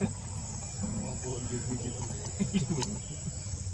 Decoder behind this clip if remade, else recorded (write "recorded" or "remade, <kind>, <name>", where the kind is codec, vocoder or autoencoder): recorded